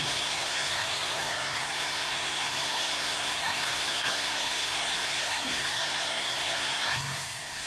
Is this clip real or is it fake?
fake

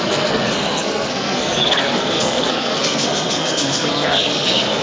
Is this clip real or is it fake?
fake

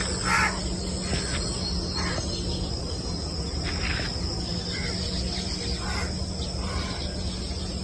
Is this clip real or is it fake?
real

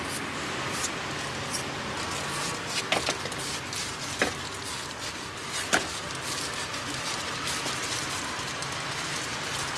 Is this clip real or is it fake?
real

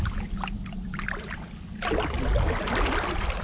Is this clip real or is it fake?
real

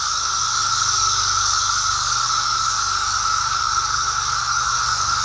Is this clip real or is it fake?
fake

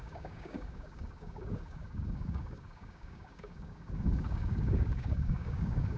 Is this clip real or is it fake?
fake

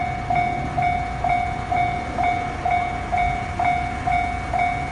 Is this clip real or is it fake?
real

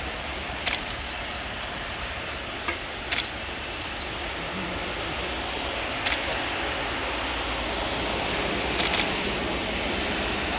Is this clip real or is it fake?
real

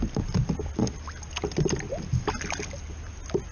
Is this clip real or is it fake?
real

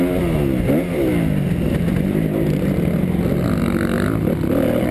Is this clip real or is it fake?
real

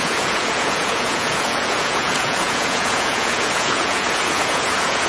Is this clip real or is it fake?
fake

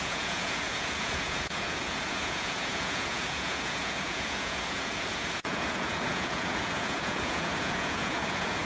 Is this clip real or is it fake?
fake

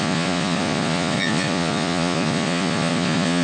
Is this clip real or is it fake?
fake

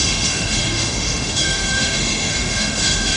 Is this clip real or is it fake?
fake